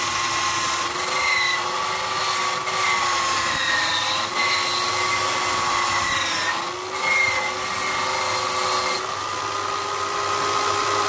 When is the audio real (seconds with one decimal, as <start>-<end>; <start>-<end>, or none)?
0.0-11.1